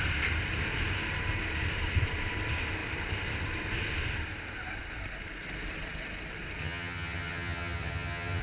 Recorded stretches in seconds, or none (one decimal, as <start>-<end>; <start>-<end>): 0.0-6.6